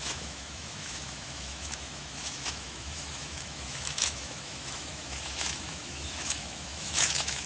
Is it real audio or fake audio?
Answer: fake